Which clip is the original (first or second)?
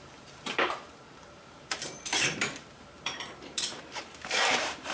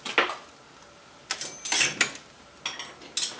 second